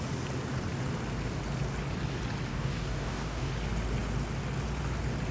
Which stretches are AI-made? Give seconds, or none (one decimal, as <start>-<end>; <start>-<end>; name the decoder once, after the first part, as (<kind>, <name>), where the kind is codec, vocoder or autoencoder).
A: 2.5-3.5 (codec, DAC)